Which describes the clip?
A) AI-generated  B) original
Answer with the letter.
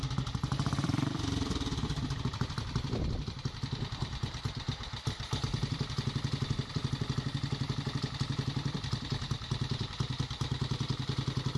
A